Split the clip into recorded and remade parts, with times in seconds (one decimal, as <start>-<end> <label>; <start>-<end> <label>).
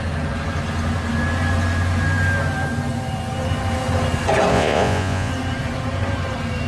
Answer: 0.0-4.5 recorded; 4.5-5.3 remade; 5.3-6.7 recorded